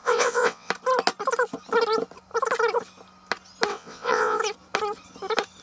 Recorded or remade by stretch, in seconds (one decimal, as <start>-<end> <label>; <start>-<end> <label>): 0.0-0.7 remade; 0.7-3.7 recorded; 3.7-4.4 remade; 4.4-5.6 recorded